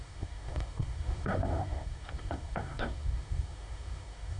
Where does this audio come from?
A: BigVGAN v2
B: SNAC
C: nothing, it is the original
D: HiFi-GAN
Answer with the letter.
B